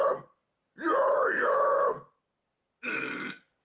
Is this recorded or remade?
recorded